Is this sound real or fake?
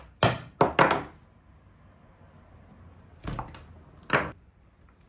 real